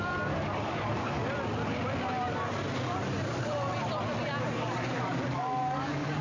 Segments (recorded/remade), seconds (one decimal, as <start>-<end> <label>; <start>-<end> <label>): 0.0-1.2 remade; 1.2-4.4 recorded; 4.4-6.2 remade